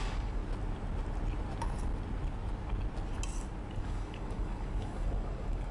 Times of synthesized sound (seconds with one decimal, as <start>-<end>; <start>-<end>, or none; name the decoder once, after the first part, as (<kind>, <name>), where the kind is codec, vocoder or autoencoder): 0.0-0.4 (codec, DAC); 3.8-5.7